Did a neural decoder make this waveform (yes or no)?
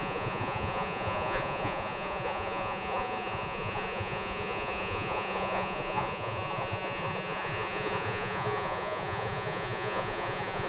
yes